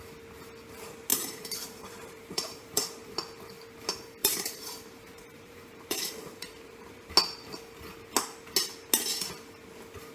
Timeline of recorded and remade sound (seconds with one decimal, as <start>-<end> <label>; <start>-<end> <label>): 0.0-1.1 recorded; 1.1-3.0 remade; 3.0-4.2 recorded; 4.2-7.1 remade; 7.1-10.1 recorded